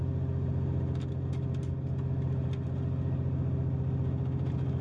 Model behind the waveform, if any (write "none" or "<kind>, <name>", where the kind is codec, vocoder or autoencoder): none